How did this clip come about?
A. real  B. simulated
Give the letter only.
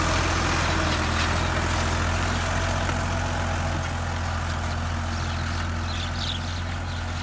A